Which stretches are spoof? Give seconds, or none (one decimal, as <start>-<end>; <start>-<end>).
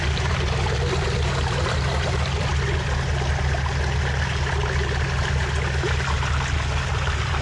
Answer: 0.0-2.5; 6.9-7.4